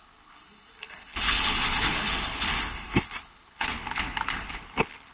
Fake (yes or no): yes